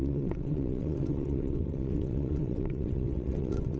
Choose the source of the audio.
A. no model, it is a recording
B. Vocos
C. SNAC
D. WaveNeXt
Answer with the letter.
D